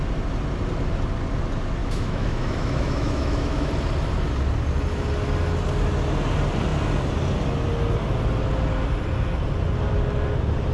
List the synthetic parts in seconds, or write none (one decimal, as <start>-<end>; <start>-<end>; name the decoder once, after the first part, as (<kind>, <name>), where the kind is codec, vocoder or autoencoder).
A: 1.8-3.7 (autoencoder, DAC-VAE)